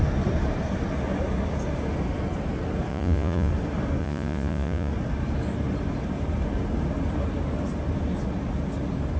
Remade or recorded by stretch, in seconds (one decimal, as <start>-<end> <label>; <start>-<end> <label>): 0.0-2.9 recorded; 2.9-3.5 remade; 3.5-4.0 recorded; 4.0-4.9 remade; 4.9-9.2 recorded